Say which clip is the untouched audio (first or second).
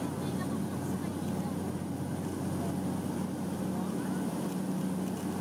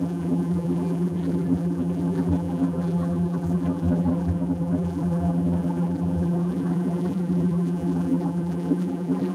first